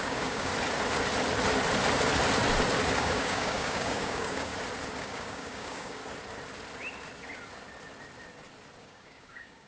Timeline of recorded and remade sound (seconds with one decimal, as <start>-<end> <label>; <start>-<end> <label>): 0.0-0.5 remade; 0.5-3.0 recorded; 3.0-4.5 remade; 4.5-5.0 recorded; 5.0-6.0 remade; 6.0-8.8 recorded; 8.8-9.7 remade